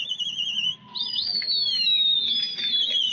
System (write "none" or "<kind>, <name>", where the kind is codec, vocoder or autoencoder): none